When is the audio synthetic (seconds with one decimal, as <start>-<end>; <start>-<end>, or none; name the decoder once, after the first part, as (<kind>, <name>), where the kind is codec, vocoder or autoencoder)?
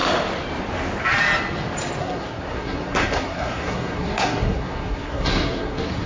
2.0-6.1 (codec, SNAC)